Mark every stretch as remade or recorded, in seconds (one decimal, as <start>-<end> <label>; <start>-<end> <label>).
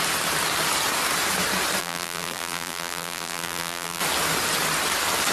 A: 0.0-1.8 recorded; 1.8-4.0 remade; 4.0-5.3 recorded